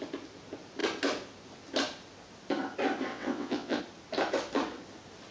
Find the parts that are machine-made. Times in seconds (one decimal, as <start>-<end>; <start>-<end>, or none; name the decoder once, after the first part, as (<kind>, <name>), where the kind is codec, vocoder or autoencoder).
3.1-3.8 (vocoder, WaveNeXt)